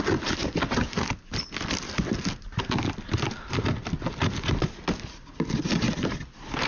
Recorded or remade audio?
recorded